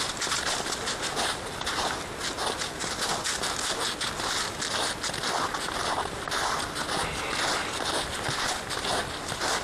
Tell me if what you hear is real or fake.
real